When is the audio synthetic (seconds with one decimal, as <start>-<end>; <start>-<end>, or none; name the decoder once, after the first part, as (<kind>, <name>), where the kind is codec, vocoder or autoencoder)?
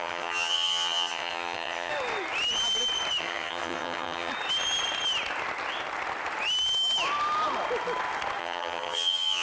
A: 0.0-1.9 (vocoder, HiFi-GAN); 3.2-4.3; 8.4-9.4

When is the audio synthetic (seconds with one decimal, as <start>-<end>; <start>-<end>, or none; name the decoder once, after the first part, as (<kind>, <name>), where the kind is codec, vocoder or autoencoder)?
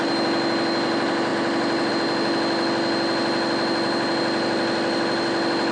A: none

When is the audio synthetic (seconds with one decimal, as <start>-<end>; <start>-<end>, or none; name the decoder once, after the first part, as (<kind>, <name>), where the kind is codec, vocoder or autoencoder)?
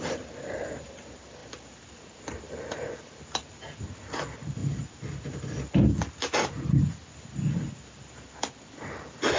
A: none